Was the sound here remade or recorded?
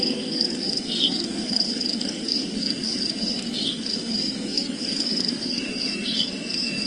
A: remade